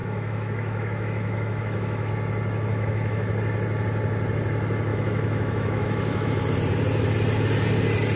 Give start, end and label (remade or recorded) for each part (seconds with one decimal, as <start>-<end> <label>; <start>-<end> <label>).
0.0-2.1 remade; 2.1-2.7 recorded; 2.7-3.3 remade; 3.3-4.9 recorded; 4.9-6.3 remade; 6.3-8.2 recorded